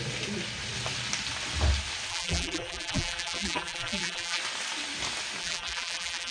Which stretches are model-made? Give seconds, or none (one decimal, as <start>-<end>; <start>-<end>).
2.1-4.4; 5.4-6.3

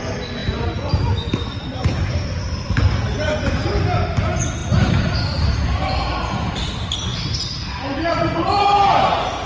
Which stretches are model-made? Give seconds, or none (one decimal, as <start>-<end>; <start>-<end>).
none

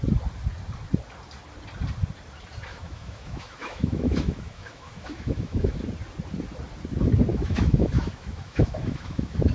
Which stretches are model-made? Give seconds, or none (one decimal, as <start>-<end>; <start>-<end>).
2.7-5.8; 7.3-9.5

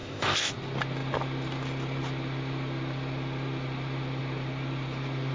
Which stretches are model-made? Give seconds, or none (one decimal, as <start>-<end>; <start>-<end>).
0.0-0.5

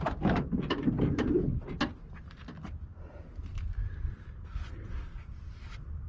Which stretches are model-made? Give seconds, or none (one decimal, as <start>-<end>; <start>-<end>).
none

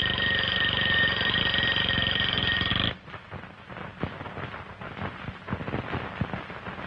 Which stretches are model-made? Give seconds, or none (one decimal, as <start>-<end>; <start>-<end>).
0.0-1.4; 1.8-2.7

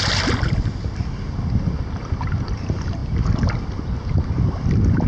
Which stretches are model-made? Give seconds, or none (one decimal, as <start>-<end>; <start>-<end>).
none

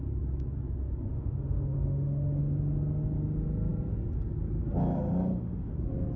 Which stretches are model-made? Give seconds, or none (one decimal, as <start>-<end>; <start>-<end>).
1.1-2.4; 5.3-5.8